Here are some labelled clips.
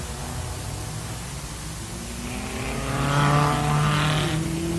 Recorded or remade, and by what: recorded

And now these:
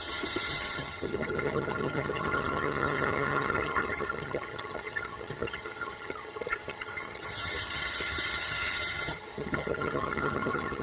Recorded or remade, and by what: remade, vocoder, HiFi-GAN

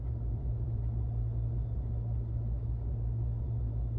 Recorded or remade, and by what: recorded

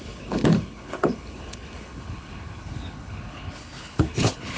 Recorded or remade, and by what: remade, codec, HILCodec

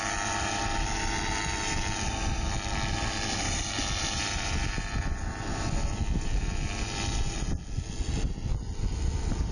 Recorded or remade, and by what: recorded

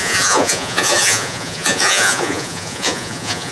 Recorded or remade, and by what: remade, vocoder, Vocos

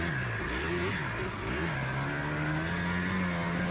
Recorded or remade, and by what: recorded